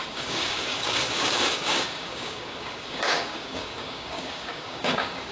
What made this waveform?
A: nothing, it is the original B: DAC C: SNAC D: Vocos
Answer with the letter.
B